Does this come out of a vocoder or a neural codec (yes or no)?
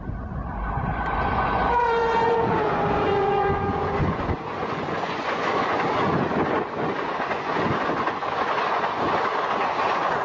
yes